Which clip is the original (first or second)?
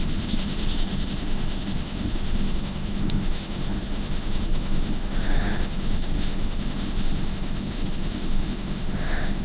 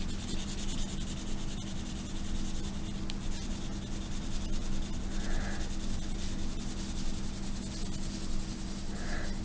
second